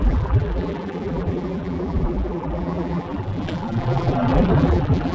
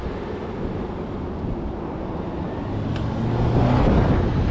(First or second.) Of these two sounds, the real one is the second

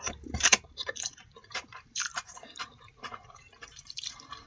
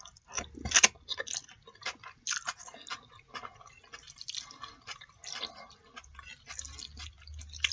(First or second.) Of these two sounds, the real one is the second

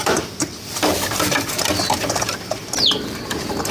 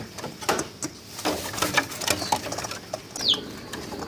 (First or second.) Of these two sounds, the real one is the second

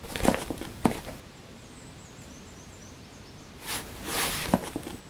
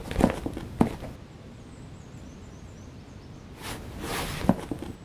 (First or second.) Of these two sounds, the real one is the second